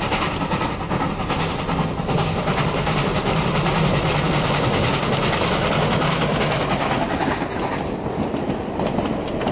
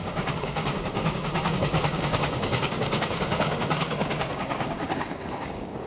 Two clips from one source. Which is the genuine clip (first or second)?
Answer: first